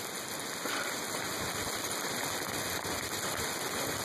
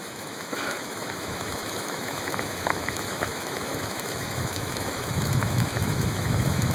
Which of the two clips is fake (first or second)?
second